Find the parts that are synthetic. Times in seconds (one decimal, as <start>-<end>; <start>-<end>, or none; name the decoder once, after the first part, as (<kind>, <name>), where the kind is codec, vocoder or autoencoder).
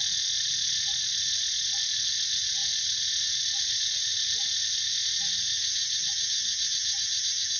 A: none